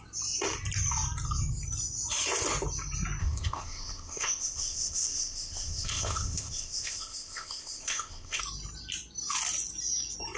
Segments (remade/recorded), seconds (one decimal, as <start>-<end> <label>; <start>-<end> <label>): 0.0-3.2 recorded; 3.2-8.4 remade; 8.4-10.4 recorded